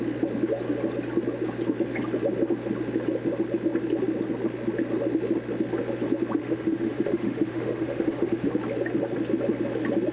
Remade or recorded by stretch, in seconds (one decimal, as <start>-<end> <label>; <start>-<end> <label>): 0.0-6.4 recorded; 6.4-8.5 remade; 8.5-10.1 recorded